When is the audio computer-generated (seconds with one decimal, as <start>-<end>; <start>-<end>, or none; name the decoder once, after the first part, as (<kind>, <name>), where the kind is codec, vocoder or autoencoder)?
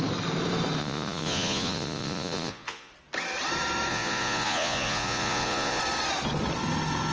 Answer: 0.8-2.9 (vocoder, Vocos); 3.9-5.8